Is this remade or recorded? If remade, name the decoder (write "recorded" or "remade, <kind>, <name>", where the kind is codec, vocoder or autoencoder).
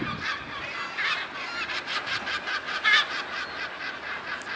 recorded